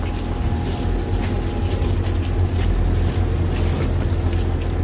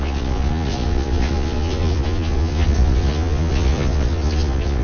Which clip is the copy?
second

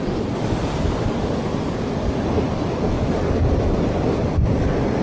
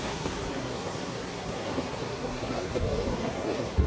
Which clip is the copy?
second